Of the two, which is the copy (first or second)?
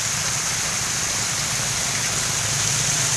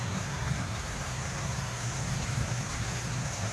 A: second